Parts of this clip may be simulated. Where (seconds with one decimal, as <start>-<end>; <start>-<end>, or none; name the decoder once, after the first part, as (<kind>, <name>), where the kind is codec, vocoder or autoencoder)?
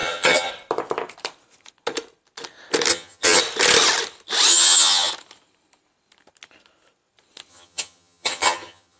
0.0-0.5 (vocoder, HiFi-GAN); 2.9-3.4; 4.5-5.1; 7.5-9.0